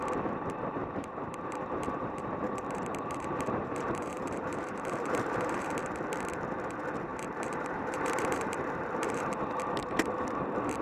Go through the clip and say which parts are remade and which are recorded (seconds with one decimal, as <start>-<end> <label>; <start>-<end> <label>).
0.0-0.8 recorded; 0.8-6.0 remade; 6.0-7.1 recorded; 7.1-9.3 remade; 9.3-10.8 recorded